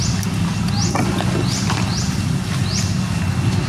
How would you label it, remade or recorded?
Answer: recorded